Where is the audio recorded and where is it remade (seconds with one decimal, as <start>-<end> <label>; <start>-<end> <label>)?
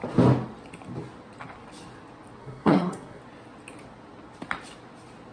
0.0-2.4 recorded; 2.4-3.2 remade; 3.2-5.3 recorded